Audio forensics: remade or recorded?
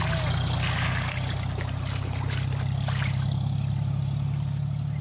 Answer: recorded